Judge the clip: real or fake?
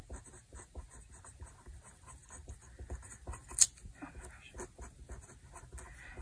real